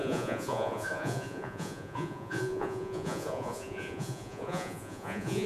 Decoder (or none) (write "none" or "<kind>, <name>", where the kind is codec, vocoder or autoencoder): vocoder, Vocos